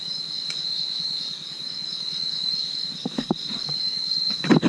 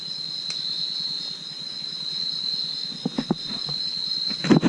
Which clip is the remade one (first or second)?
first